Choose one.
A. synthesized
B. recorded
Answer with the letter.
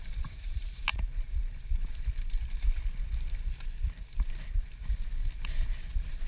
A